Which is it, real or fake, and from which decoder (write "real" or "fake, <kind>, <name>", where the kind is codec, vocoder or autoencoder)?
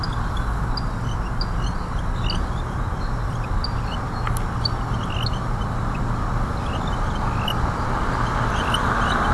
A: real